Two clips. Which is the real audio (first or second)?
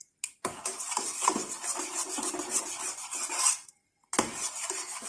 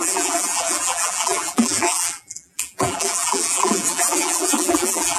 first